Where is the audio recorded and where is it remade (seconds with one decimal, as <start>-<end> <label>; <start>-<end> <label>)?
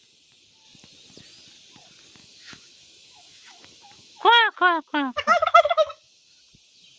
0.0-2.2 recorded; 2.2-6.4 remade; 6.4-7.0 recorded